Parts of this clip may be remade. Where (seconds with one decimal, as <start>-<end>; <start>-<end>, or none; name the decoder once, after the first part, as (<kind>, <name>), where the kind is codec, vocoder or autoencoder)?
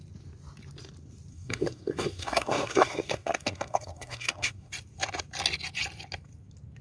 1.3-4.7 (codec, SNAC)